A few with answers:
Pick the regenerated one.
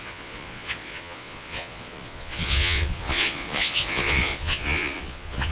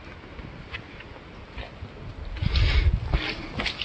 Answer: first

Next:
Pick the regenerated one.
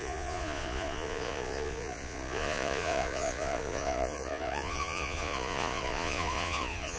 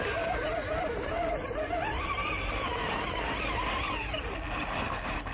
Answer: first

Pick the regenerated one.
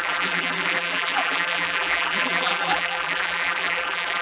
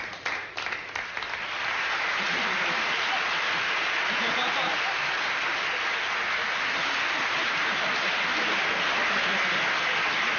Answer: first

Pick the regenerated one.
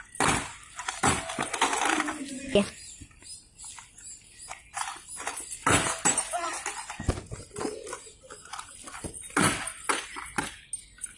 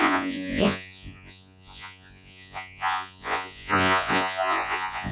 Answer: second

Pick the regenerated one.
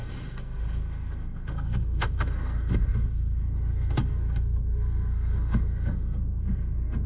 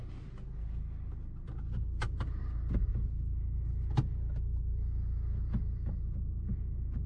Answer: first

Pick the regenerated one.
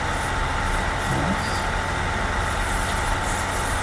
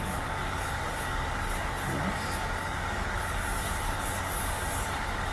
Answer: second